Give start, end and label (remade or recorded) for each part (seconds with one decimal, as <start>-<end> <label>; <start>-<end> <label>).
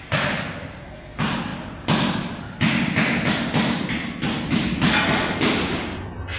0.0-6.4 recorded